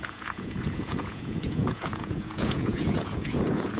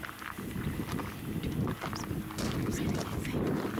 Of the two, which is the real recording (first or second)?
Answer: second